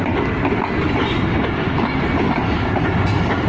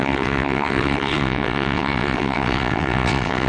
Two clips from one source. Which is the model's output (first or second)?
second